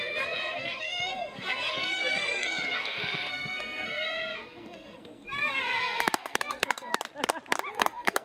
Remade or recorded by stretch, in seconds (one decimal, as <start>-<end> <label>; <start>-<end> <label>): 0.0-6.9 remade; 6.9-7.7 recorded; 7.7-8.2 remade